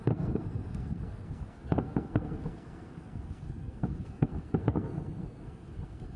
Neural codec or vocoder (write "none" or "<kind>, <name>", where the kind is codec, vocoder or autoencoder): codec, SNAC